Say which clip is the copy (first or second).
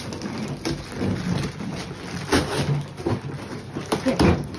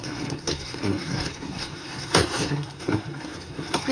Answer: second